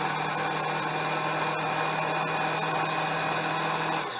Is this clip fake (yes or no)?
no